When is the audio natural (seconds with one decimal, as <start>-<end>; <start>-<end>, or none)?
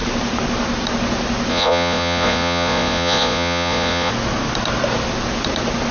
0.0-1.5; 4.1-5.9